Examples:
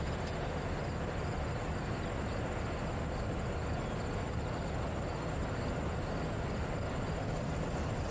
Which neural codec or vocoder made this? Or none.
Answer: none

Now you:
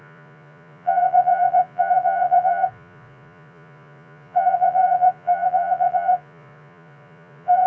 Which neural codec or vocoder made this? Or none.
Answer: vocoder, Vocos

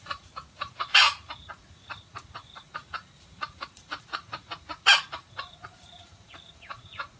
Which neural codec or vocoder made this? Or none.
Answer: vocoder, Vocos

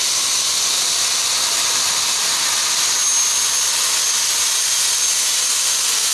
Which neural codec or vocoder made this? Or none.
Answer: none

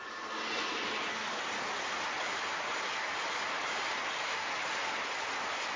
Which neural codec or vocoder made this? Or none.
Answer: none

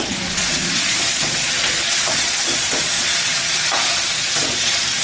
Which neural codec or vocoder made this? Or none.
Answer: vocoder, Vocos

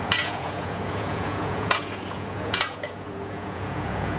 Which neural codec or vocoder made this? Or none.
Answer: vocoder, Vocos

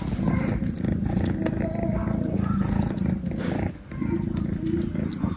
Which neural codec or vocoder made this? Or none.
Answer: none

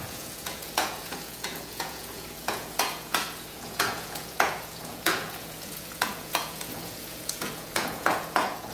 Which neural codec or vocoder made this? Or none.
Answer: vocoder, Vocos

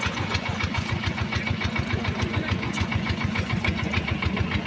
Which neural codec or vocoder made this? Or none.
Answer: vocoder, Vocos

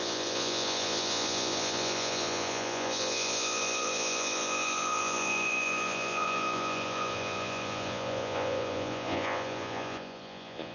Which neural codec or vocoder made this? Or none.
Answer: vocoder, Vocos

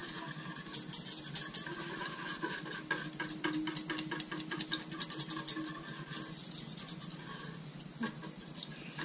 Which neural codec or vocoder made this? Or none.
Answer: none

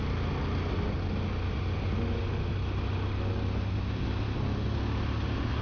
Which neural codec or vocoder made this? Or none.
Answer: none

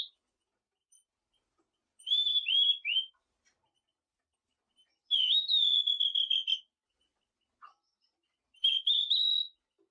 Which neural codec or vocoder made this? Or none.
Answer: none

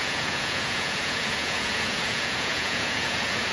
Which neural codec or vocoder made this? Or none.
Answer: vocoder, Vocos